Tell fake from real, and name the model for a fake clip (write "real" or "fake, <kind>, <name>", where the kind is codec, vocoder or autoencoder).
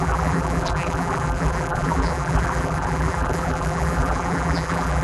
fake, vocoder, BigVGAN v2